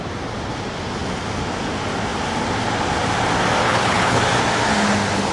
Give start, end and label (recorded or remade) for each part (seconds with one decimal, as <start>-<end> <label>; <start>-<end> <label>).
0.0-3.6 recorded; 3.6-4.2 remade; 4.2-5.3 recorded